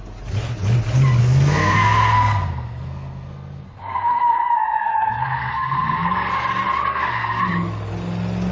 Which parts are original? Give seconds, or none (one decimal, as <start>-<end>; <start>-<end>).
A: 0.0-1.2; 6.3-6.9; 7.5-8.5

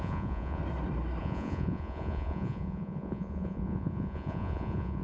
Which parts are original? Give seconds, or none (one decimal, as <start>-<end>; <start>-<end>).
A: 0.6-1.2

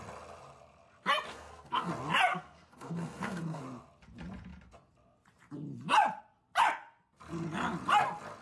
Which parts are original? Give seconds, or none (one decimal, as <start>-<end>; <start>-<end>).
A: 0.0-1.3; 1.9-2.3; 3.6-8.4

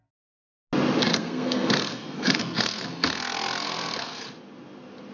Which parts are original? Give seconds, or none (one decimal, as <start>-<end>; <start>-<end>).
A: 0.0-1.1; 4.2-5.1

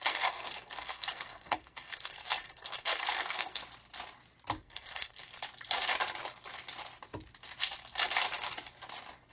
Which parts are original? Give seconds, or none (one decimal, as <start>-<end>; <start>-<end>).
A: 3.6-4.6; 5.2-9.3

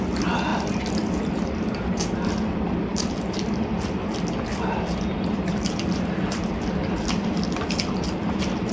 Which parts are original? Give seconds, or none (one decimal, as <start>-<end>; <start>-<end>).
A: 0.0-0.5; 1.9-2.9; 7.4-8.7

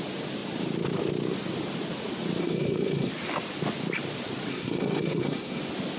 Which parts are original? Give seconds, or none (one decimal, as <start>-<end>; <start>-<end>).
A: 0.0-2.4; 3.1-4.5; 5.6-6.0

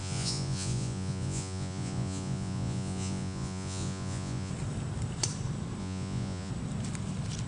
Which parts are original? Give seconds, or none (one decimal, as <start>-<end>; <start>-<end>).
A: 4.5-5.8; 6.5-7.5